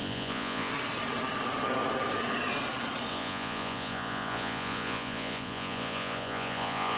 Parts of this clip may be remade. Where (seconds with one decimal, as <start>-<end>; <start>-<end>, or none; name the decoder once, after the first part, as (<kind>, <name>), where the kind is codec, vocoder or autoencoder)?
0.0-0.7 (vocoder, Vocos); 3.1-7.0